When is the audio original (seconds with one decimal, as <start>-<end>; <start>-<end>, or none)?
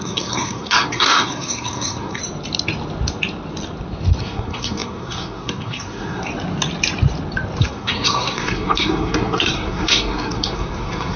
2.2-4.2; 6.3-7.6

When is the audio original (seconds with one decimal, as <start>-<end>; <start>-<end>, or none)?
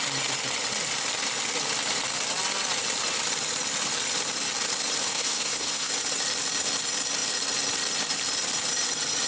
0.0-5.0; 5.9-9.3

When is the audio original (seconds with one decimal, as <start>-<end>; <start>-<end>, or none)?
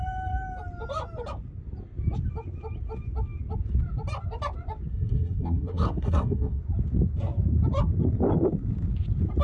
0.0-4.9; 6.6-9.4